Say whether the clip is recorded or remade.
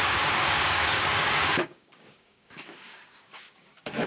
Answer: remade